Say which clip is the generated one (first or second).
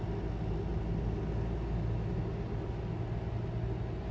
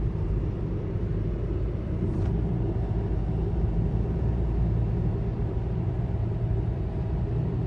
second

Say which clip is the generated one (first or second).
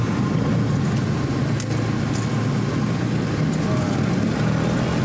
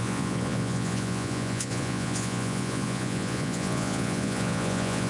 second